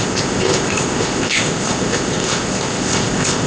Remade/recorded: remade